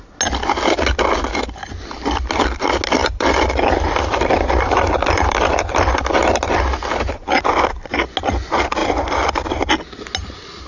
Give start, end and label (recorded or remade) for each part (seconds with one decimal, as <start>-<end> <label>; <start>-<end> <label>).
0.0-3.0 recorded; 3.0-6.0 remade; 6.0-8.8 recorded; 8.8-9.7 remade; 9.7-10.7 recorded